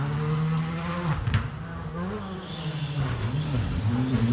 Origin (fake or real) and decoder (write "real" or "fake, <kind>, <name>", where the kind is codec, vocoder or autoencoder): real